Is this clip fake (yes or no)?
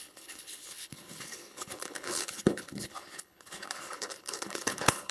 yes